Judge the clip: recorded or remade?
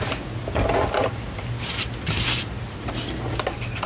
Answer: recorded